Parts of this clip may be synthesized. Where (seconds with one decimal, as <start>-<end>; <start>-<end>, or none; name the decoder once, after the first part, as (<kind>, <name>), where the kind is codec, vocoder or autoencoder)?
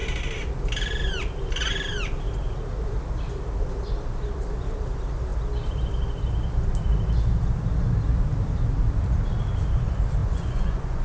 10.2-11.0 (vocoder, Vocos)